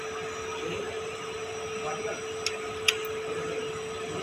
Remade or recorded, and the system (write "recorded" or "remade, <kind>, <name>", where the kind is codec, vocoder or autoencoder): recorded